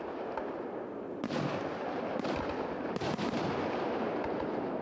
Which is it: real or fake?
real